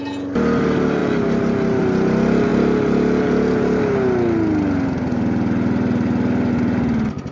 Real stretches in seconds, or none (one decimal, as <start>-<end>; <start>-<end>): 0.0-7.3